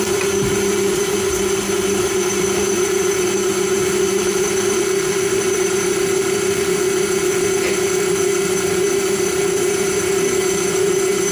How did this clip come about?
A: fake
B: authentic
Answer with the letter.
A